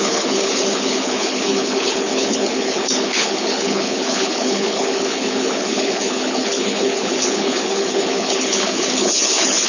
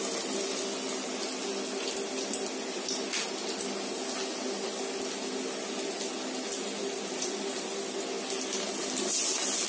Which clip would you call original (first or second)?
second